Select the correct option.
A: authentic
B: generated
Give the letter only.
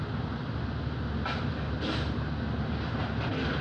A